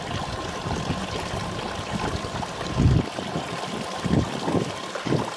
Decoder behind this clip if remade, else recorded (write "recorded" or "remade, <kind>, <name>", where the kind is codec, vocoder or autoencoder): recorded